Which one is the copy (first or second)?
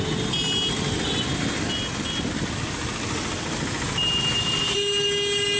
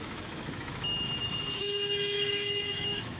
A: second